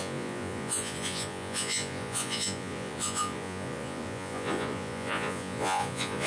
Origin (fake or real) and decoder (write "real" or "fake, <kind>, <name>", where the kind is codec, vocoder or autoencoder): fake, vocoder, Vocos